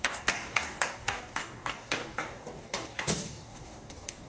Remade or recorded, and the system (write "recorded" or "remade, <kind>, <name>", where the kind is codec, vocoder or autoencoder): remade, codec, DAC